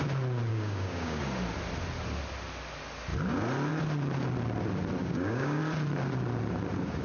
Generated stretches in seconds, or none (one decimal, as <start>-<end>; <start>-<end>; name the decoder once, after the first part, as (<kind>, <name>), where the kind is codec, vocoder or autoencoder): 0.5-1.2 (codec, DAC); 5.0-5.6